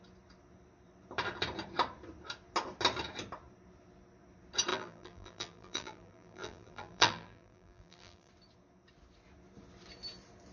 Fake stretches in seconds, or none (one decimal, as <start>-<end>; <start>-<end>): 4.7-8.3